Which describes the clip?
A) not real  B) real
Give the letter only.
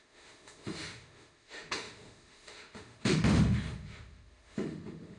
A